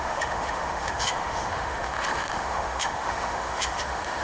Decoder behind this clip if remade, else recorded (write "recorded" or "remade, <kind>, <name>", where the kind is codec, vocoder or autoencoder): remade, autoencoder, DAC-VAE